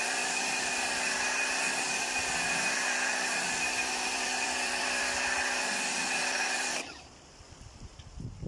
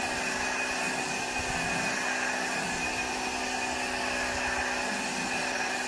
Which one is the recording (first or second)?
second